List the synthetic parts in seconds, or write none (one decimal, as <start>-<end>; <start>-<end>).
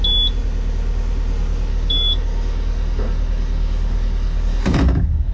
1.7-5.3